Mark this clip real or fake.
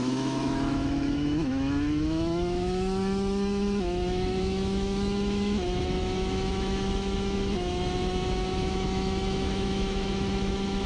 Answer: fake